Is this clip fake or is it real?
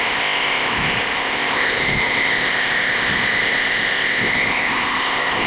fake